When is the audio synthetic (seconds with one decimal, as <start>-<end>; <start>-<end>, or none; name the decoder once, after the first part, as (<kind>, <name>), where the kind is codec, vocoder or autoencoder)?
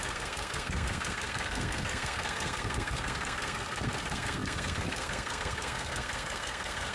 0.0-6.9 (codec, SNAC)